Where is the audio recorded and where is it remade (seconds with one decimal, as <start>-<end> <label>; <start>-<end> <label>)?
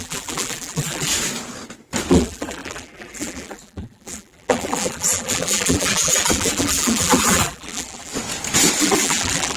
0.0-1.1 remade; 1.1-2.1 recorded; 2.1-8.1 remade; 8.1-8.8 recorded; 8.8-9.6 remade